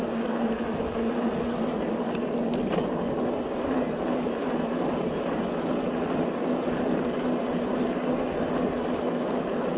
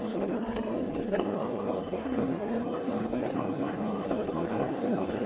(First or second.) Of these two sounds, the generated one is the second